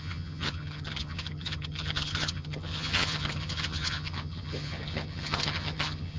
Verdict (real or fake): fake